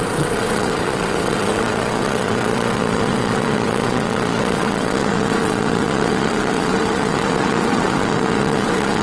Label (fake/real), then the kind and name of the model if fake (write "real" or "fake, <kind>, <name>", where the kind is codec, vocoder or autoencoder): fake, vocoder, WaveNeXt